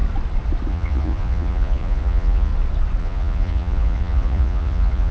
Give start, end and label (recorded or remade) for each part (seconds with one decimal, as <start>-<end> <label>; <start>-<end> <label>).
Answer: 0.0-0.7 recorded; 0.7-2.5 remade; 2.5-3.0 recorded; 3.0-5.1 remade